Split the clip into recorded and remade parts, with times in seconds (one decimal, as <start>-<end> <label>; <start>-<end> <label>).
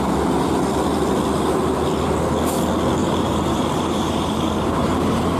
0.0-3.0 recorded; 3.0-5.4 remade